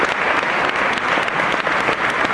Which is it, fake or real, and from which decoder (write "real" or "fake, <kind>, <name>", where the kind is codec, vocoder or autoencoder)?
real